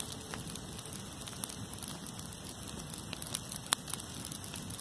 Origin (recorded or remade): recorded